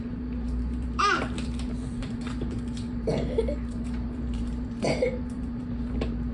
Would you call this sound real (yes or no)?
no